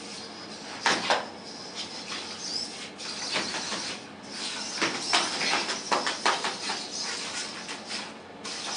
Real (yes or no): yes